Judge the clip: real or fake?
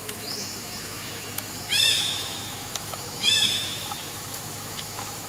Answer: fake